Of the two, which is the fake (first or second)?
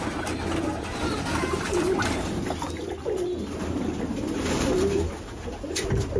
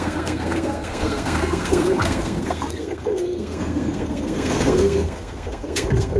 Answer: second